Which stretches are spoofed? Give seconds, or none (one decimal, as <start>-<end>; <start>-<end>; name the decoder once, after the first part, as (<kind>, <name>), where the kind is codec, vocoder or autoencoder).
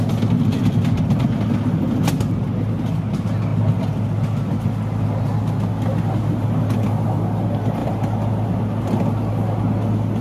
none